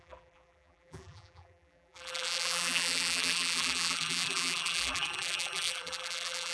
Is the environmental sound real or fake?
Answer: fake